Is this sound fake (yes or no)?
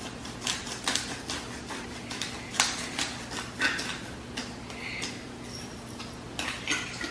no